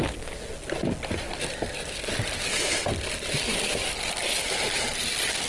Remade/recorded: recorded